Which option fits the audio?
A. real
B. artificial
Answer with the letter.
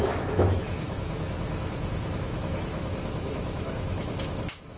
B